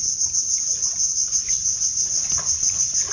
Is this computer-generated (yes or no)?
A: no